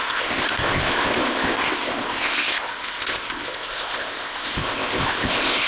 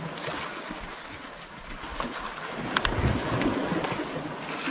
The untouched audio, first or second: second